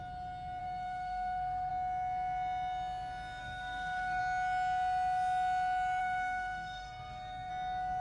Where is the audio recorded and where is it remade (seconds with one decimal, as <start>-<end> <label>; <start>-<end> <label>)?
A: 0.0-0.6 recorded; 0.6-1.7 remade; 1.7-3.4 recorded; 3.4-4.2 remade; 4.2-6.0 recorded; 6.0-7.5 remade; 7.5-8.0 recorded